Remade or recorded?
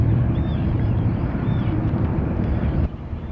remade